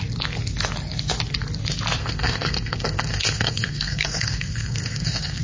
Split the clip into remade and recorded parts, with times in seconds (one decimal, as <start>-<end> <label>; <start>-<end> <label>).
0.0-2.0 recorded; 2.0-5.4 remade